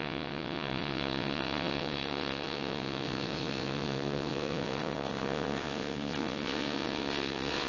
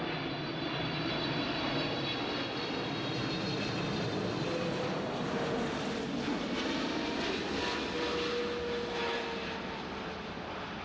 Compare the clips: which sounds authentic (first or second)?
second